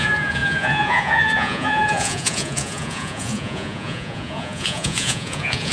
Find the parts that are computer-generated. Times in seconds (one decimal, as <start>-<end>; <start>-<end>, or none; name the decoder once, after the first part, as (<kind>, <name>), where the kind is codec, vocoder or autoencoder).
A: 0.0-5.7 (vocoder, Vocos)